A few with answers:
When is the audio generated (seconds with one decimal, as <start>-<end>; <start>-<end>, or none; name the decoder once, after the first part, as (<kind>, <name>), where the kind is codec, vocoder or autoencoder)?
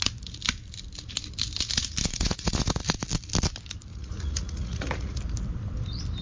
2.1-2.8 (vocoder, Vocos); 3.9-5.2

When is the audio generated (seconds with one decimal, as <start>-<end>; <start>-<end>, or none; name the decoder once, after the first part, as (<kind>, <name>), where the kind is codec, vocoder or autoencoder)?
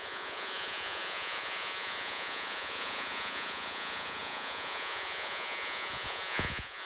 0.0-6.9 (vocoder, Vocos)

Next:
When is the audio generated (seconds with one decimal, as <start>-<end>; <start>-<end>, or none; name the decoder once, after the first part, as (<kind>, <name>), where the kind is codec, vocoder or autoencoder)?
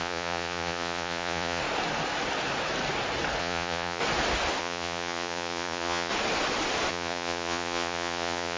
0.0-1.6 (vocoder, Vocos); 3.4-4.0; 4.6-6.1; 6.9-8.6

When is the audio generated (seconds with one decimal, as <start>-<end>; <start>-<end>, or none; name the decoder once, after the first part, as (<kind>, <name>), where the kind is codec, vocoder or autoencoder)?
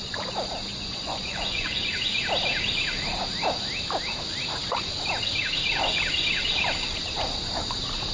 0.7-1.9 (vocoder, Vocos)